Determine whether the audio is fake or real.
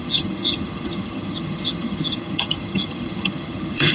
fake